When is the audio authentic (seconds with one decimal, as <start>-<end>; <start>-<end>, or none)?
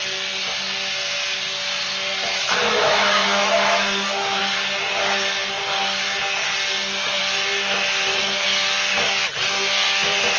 0.0-2.4; 4.4-10.4